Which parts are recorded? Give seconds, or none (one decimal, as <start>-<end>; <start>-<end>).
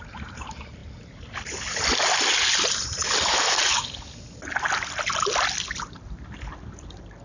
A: 0.0-7.2